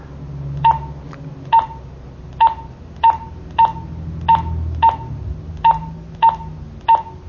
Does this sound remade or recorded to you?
recorded